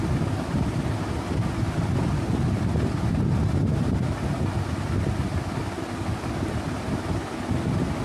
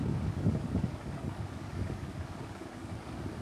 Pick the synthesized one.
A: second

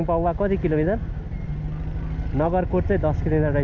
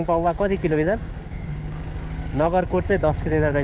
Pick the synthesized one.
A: second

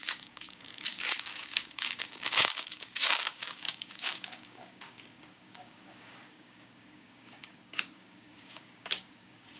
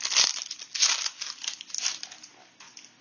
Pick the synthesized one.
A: first